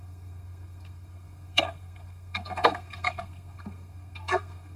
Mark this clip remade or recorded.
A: remade